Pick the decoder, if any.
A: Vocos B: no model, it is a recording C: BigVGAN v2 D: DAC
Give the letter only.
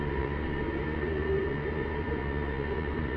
A